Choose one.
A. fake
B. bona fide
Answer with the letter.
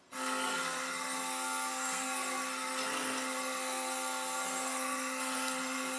A